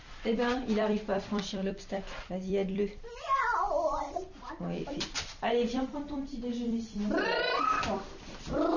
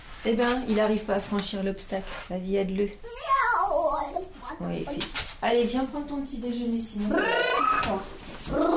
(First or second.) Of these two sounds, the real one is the second